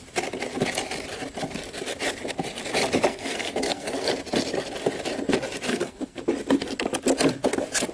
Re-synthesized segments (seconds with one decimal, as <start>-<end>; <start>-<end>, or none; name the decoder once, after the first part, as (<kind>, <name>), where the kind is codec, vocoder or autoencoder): 3.1-4.1 (codec, SNAC); 5.7-6.2

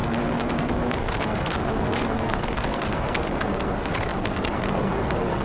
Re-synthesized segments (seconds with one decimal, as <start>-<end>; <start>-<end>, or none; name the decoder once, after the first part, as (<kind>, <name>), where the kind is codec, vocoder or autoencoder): 0.0-5.4 (codec, SNAC)

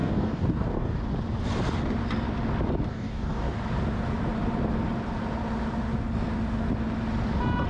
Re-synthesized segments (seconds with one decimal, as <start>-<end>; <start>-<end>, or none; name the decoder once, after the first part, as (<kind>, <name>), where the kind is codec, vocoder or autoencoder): 0.0-1.0 (codec, DAC); 2.9-3.6

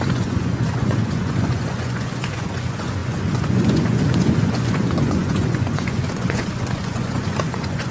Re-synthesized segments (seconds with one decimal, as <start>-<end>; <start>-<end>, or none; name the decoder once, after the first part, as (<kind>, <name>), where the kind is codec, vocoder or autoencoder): 0.0-7.9 (vocoder, Vocos)